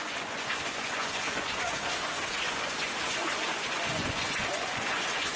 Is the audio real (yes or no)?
no